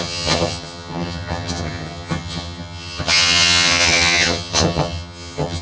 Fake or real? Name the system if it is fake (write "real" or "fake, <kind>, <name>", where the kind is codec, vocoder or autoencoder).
fake, vocoder, HiFi-GAN